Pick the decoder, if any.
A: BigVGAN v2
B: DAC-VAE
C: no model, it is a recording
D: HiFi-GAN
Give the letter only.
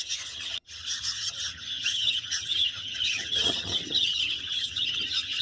D